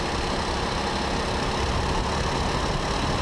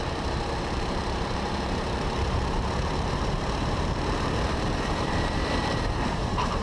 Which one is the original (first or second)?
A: first